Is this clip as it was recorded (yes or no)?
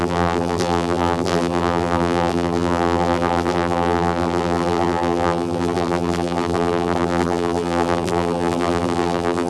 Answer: no